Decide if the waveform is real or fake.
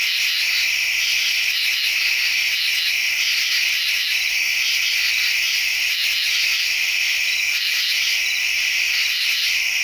real